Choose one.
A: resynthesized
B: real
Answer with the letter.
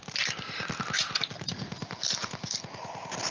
B